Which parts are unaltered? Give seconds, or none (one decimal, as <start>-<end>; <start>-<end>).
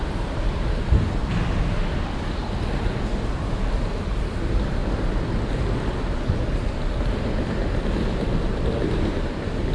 1.2-3.4; 4.8-9.1